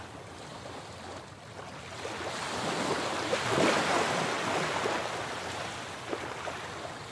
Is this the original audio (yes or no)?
yes